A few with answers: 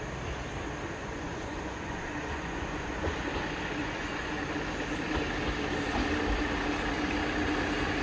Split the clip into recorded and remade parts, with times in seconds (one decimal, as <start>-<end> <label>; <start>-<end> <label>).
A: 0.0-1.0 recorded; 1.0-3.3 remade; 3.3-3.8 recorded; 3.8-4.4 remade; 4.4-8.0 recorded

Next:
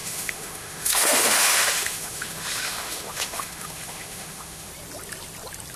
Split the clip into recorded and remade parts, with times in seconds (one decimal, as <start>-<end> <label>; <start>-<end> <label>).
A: 0.0-4.7 remade; 4.7-5.8 recorded

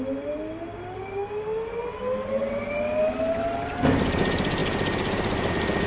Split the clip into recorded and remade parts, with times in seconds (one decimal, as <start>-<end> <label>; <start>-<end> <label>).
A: 0.0-5.9 recorded